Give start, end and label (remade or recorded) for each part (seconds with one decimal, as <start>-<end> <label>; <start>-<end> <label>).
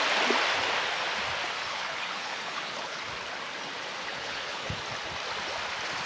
0.0-1.7 recorded; 1.7-3.0 remade; 3.0-4.1 recorded; 4.1-4.8 remade; 4.8-6.1 recorded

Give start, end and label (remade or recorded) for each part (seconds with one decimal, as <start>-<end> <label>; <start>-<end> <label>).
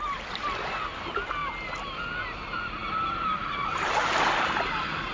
0.0-5.1 recorded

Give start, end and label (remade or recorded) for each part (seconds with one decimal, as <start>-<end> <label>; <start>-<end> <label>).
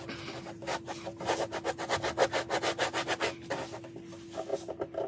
0.0-5.1 recorded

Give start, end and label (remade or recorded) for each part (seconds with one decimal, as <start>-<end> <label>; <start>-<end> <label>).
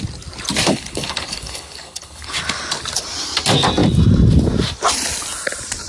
0.0-0.7 recorded; 0.7-2.3 remade; 2.3-5.9 recorded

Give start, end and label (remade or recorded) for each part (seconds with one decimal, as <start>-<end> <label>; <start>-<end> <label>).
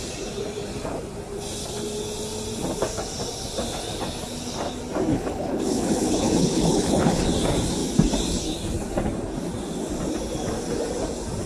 0.0-5.1 recorded; 5.1-7.3 remade; 7.3-11.5 recorded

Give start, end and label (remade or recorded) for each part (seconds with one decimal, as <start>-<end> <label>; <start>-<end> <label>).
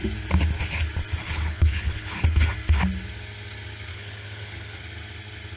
0.0-1.2 recorded; 1.2-2.1 remade; 2.1-3.9 recorded; 3.9-4.8 remade; 4.8-5.6 recorded